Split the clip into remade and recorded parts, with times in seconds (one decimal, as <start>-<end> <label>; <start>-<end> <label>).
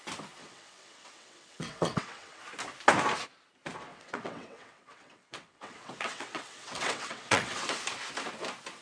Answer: 0.0-0.4 recorded; 0.4-2.4 remade; 2.4-3.9 recorded; 3.9-7.7 remade; 7.7-8.8 recorded